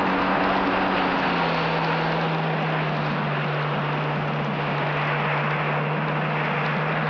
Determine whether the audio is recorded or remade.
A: recorded